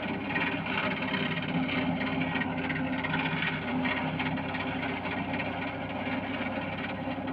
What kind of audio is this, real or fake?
real